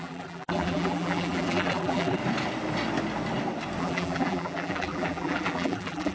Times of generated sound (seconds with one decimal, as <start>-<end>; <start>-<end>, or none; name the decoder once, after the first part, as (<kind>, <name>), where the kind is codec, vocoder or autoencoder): 0.0-2.2 (vocoder, BigVGAN v2); 3.8-6.1